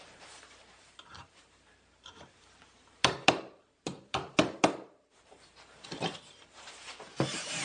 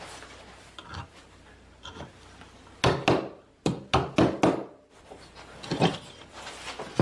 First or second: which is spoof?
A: first